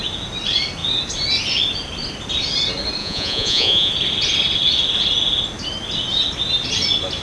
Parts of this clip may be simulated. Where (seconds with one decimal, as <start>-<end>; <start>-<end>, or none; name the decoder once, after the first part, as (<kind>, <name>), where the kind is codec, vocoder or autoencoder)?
3.0-3.9 (vocoder, Vocos)